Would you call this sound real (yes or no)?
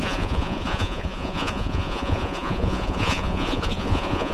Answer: no